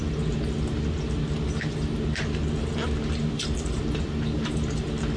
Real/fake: real